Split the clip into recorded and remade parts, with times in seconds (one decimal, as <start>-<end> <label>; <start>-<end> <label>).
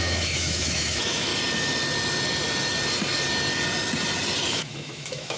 0.0-1.3 remade; 1.3-4.5 recorded; 4.5-5.4 remade